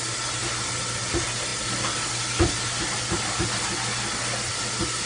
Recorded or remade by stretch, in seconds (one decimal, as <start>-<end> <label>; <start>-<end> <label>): 0.0-5.1 recorded